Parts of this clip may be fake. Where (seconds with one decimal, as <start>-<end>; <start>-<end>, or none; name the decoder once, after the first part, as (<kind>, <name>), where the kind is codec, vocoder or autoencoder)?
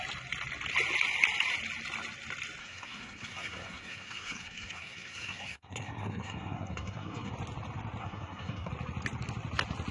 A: 2.6-7.3 (codec, SNAC); 8.0-8.7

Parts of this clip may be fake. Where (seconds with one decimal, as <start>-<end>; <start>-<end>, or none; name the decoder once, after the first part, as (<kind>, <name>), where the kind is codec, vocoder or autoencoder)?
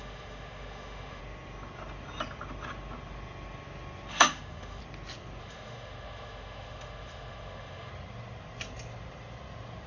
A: 0.0-1.2 (autoencoder, DAC-VAE); 4.1-4.8; 5.4-7.9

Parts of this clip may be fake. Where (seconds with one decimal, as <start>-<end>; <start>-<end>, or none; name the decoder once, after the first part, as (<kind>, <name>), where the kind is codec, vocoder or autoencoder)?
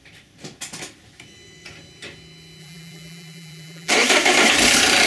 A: 2.6-3.9 (vocoder, BigVGAN v2)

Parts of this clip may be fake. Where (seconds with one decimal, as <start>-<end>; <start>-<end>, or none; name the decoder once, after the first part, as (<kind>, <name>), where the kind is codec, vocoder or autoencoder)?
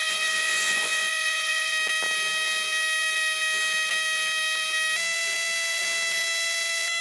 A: 0.0-1.7 (vocoder, Vocos)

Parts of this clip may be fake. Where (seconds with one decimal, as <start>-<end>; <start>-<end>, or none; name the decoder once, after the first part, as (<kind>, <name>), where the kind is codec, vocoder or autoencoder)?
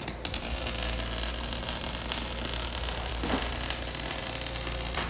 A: 3.1-5.1 (vocoder, BigVGAN v2)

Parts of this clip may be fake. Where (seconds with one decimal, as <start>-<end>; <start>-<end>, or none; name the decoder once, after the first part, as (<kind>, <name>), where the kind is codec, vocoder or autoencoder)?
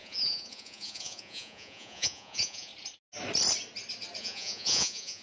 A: 0.0-2.7 (vocoder, Vocos); 4.2-5.2